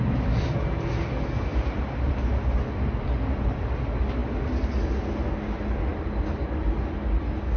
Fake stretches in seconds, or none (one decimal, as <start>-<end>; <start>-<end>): 1.5-3.7; 5.9-6.6